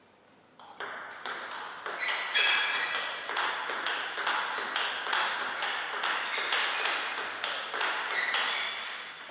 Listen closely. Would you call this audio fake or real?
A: real